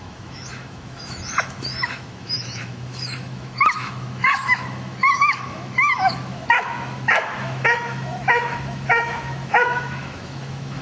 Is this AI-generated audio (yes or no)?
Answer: yes